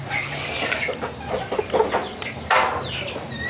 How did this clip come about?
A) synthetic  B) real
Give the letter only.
B